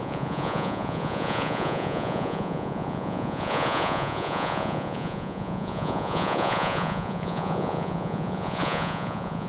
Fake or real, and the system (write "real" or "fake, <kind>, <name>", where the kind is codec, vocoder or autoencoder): fake, vocoder, Vocos